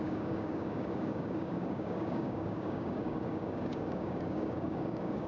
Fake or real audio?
fake